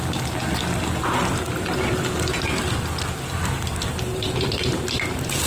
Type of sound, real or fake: real